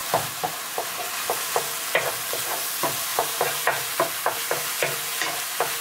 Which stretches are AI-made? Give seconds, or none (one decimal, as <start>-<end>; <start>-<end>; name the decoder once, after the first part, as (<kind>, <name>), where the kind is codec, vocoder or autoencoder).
0.0-0.9 (vocoder, BigVGAN v2); 3.1-4.1